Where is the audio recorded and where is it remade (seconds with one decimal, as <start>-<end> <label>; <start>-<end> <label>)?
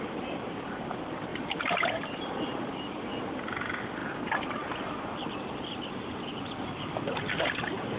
0.0-1.3 recorded; 1.3-2.8 remade; 2.8-8.0 recorded